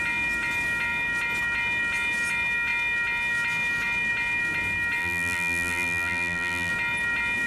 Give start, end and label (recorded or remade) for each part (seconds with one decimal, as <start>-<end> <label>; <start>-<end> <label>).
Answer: 0.0-5.0 recorded; 5.0-6.7 remade; 6.7-7.5 recorded